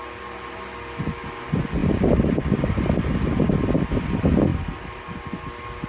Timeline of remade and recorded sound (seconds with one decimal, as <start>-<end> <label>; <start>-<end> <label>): 0.0-1.8 recorded; 1.8-2.9 remade; 2.9-4.5 recorded; 4.5-5.5 remade; 5.5-5.9 recorded